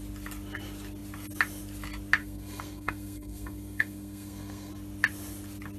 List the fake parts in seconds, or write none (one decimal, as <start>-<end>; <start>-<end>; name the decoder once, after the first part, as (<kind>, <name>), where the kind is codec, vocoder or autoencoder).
2.2-4.7 (codec, SNAC)

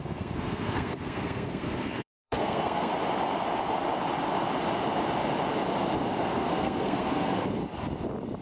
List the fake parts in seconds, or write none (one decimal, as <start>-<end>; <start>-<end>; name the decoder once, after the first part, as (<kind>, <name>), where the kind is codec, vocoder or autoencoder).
0.0-2.9 (codec, SNAC); 6.2-7.6

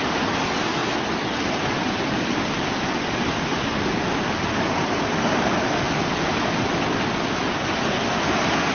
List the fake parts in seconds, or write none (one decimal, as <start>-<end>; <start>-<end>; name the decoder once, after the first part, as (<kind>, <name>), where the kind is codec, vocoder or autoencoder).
none

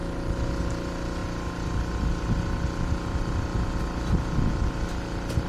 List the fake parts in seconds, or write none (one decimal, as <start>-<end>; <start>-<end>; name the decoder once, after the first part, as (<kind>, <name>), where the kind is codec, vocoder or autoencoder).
none